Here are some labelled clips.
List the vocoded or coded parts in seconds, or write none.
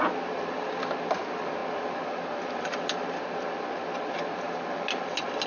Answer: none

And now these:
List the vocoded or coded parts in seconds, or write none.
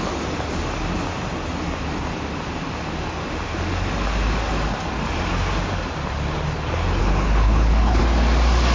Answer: 7.0-8.0 (codec, HILCodec)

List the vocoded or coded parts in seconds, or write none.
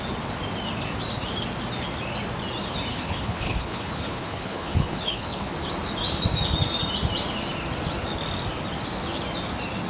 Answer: 2.9-5.5 (codec, HILCodec)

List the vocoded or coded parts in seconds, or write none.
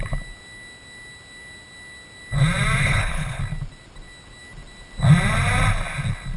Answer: 2.8-3.4 (codec, HILCodec)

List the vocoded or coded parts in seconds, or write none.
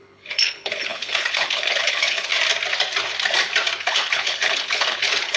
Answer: 0.0-2.3 (codec, HILCodec); 3.8-5.4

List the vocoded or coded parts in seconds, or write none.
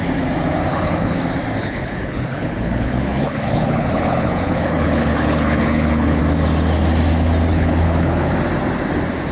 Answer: 0.7-1.2 (codec, HILCodec); 1.6-6.2; 7.5-8.3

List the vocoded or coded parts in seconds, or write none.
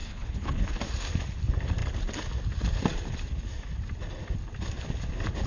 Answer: 0.0-0.8 (codec, HILCodec)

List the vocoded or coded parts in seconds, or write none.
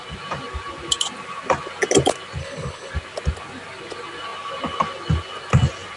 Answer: 2.4-2.9 (codec, HILCodec)